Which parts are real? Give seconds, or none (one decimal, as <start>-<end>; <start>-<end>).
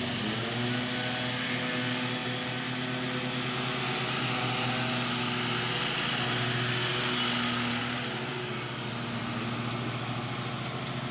0.0-11.1